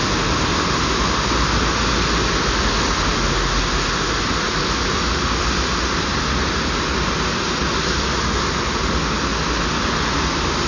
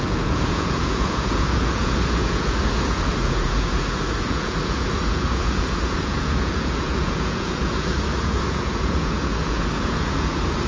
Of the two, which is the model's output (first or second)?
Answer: second